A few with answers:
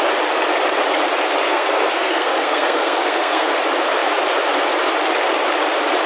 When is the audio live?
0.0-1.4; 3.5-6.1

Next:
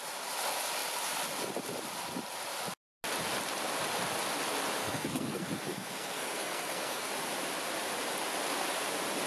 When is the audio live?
0.0-4.8; 7.1-9.3

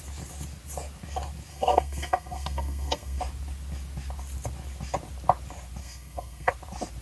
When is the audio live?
0.0-1.5; 3.2-5.8; 6.5-7.0

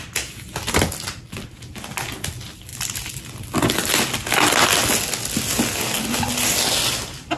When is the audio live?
0.0-7.4